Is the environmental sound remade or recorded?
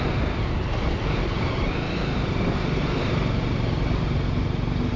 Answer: recorded